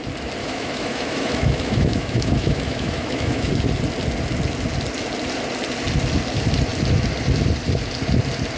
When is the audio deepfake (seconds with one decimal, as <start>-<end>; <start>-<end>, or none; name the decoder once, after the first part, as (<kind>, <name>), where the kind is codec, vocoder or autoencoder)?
0.4-3.5 (autoencoder, DAC-VAE)